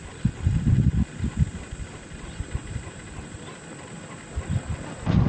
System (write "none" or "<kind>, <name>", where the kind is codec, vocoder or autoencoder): none